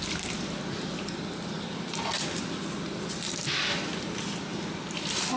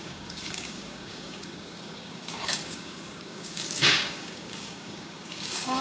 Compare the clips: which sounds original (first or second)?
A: first